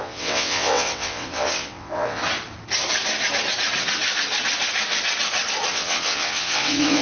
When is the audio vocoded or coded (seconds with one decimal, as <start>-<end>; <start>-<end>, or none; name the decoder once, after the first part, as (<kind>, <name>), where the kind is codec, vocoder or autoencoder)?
0.0-2.2 (vocoder, WaveNeXt); 5.7-7.0